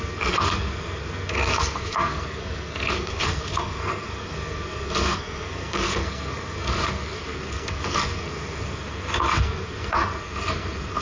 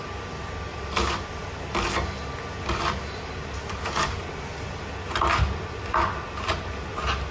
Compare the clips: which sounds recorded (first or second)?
second